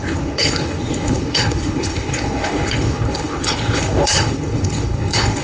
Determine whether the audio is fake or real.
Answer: fake